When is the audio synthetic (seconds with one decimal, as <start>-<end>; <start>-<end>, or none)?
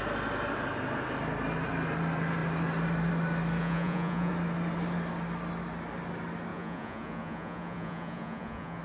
3.6-4.3; 6.5-8.8